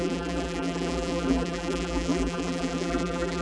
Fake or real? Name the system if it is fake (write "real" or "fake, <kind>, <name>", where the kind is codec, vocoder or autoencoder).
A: fake, vocoder, BigVGAN v2